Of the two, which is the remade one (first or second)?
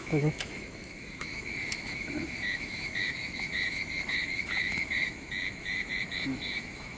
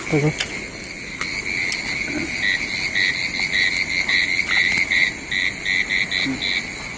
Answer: first